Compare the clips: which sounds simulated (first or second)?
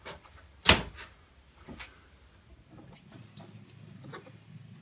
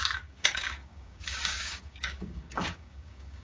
second